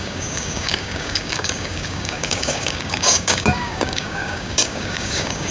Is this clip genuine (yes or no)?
no